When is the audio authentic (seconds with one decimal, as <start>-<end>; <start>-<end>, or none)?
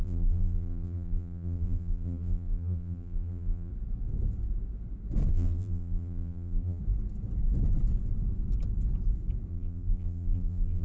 3.7-5.3; 6.8-9.5